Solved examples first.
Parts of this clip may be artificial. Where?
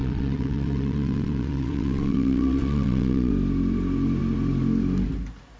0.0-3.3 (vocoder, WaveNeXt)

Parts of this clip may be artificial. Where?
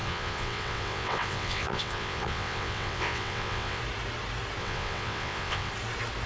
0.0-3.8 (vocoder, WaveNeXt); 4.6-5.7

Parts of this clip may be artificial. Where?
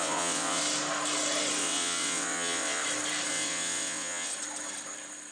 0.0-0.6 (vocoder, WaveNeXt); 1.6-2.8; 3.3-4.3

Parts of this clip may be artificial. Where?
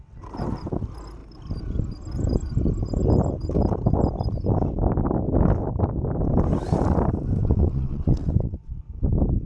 7.4-8.7 (vocoder, WaveNeXt)